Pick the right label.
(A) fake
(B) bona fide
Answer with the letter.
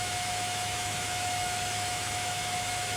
A